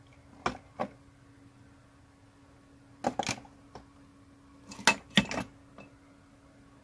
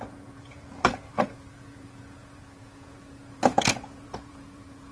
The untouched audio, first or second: first